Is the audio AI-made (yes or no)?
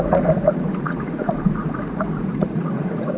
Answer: yes